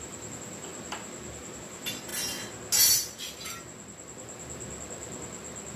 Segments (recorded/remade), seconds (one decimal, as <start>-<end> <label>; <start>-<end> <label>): 0.0-2.1 remade; 2.1-5.8 recorded